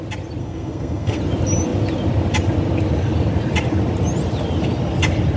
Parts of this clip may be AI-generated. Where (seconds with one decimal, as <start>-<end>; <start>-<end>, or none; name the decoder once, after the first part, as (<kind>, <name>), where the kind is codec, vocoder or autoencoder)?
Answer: 0.4-1.2 (codec, SNAC)